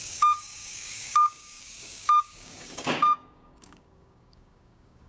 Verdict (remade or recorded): remade